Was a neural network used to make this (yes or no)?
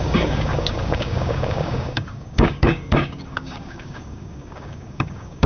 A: yes